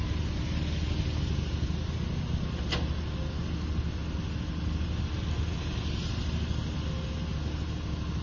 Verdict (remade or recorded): recorded